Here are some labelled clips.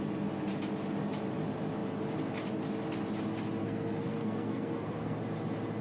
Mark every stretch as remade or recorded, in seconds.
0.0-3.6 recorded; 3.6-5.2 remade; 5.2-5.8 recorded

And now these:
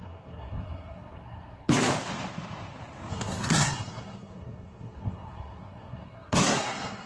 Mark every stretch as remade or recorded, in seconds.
0.0-1.9 remade; 1.9-3.1 recorded; 3.1-7.1 remade

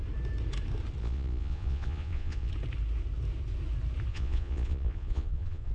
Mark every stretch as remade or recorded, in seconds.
0.0-1.0 recorded; 1.0-2.5 remade; 2.5-4.1 recorded; 4.1-5.7 remade

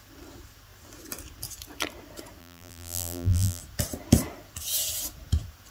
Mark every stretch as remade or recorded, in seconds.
0.0-2.4 recorded; 2.4-3.6 remade; 3.6-5.7 recorded

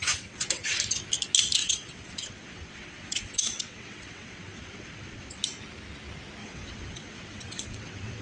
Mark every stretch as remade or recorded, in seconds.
0.0-0.8 remade; 0.8-1.6 recorded; 1.6-5.4 remade; 5.4-6.4 recorded; 6.4-8.2 remade